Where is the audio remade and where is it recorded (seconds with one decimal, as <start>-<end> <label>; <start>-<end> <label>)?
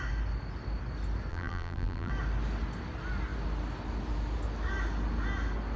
0.0-1.3 recorded; 1.3-2.1 remade; 2.1-5.8 recorded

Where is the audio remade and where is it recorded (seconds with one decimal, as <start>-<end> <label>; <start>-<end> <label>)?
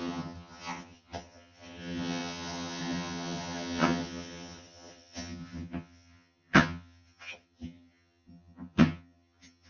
0.0-9.7 remade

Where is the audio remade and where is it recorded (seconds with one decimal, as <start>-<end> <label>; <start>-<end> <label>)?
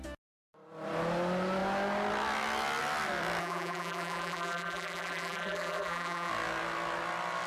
0.0-3.4 recorded; 3.4-6.3 remade; 6.3-7.5 recorded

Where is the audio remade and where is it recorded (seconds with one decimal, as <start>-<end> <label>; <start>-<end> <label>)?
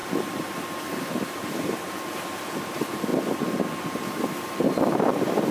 0.0-5.5 recorded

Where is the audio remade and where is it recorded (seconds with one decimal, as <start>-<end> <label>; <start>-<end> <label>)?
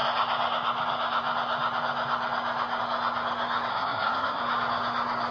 0.0-3.7 recorded; 3.7-4.4 remade; 4.4-5.3 recorded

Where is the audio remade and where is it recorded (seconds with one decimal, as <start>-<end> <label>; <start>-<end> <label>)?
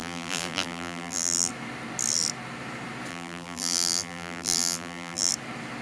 0.0-1.5 remade; 1.5-3.1 recorded; 3.1-5.3 remade; 5.3-5.8 recorded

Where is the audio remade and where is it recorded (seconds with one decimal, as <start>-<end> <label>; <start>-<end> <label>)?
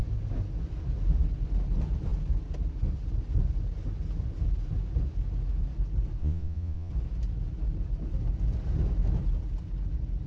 0.0-6.2 recorded; 6.2-6.9 remade; 6.9-10.3 recorded